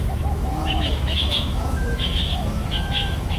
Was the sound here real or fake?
fake